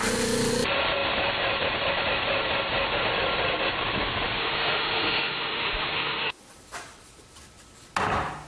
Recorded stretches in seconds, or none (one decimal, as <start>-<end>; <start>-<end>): 0.0-4.4; 6.4-8.5